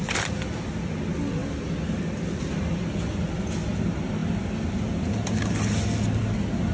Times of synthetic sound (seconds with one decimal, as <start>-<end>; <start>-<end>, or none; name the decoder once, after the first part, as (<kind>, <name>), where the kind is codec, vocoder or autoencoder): none